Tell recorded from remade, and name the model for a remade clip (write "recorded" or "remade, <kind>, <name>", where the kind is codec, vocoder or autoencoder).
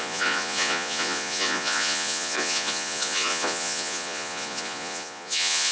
remade, vocoder, Vocos